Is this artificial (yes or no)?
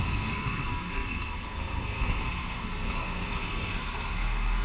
yes